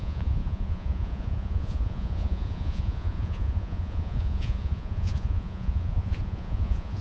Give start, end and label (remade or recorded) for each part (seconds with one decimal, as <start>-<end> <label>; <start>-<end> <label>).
0.0-7.0 remade